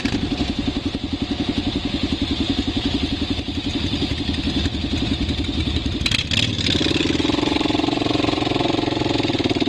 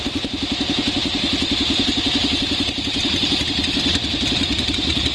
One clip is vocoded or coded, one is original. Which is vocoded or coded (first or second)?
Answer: second